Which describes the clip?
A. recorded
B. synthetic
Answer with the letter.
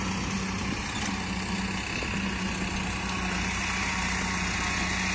A